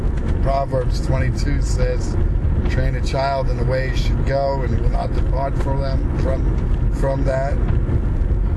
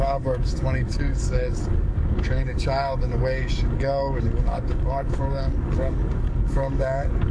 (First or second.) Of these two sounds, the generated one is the second